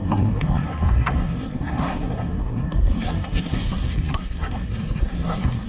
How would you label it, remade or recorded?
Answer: remade